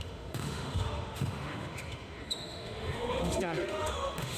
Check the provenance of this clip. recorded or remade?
remade